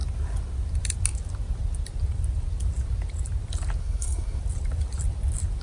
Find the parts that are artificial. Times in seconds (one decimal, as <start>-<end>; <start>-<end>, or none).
3.8-4.4